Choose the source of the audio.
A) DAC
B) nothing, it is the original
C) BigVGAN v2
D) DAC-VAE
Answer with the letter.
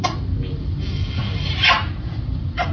B